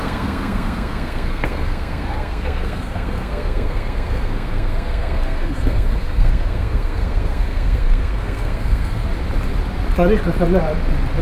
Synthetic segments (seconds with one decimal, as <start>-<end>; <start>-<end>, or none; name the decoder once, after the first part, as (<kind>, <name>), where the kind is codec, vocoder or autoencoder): 0.0-9.0 (codec, SNAC)